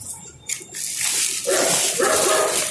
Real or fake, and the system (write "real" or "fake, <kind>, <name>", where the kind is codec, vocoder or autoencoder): real